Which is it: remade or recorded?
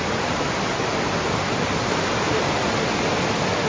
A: recorded